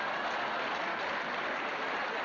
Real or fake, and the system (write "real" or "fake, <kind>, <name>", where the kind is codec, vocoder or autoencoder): real